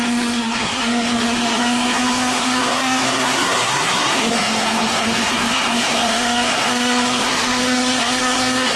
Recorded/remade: remade